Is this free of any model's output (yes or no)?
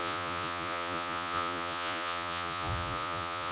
no